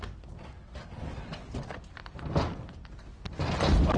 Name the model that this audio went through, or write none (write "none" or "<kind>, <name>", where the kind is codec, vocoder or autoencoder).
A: none